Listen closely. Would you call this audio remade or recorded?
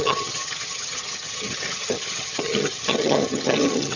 remade